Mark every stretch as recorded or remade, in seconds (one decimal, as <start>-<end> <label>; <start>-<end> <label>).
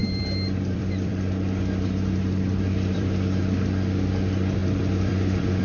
0.0-3.4 remade; 3.4-4.6 recorded; 4.6-5.6 remade